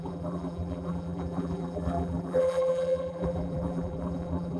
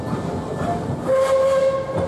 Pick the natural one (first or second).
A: second